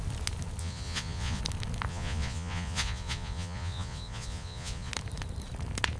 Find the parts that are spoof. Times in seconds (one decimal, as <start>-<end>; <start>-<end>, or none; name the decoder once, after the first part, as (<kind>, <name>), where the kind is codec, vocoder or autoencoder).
0.6-1.4 (vocoder, Vocos); 1.9-4.9